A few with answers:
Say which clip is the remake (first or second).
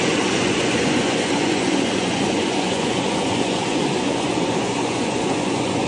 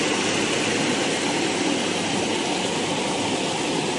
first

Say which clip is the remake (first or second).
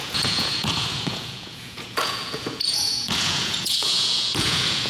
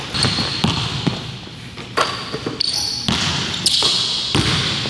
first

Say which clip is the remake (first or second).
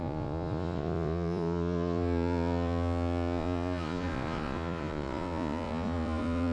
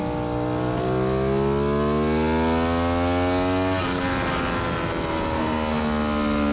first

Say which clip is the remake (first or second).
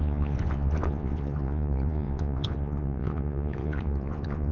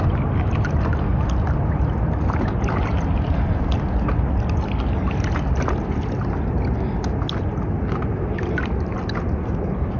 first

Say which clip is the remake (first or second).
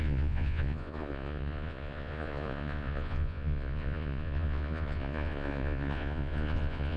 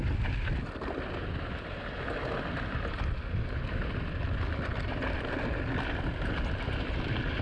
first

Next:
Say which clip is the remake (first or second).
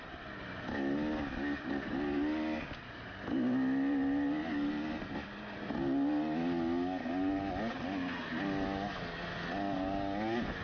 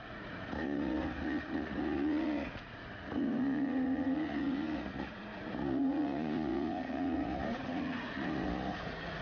second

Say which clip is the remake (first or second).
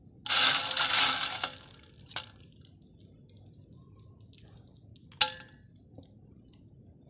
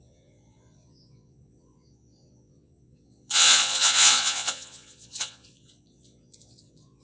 second